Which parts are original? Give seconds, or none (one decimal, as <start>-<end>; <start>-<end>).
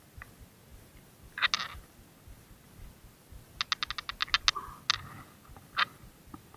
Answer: 0.0-6.6